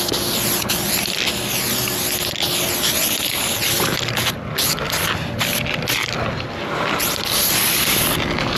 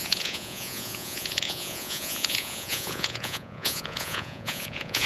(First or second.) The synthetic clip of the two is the second